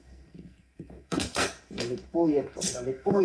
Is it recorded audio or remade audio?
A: remade